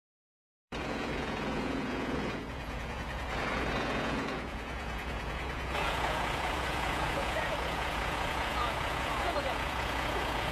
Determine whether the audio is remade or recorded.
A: remade